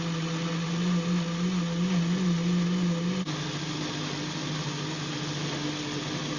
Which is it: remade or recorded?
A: recorded